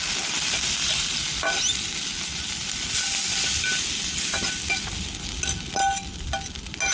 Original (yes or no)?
yes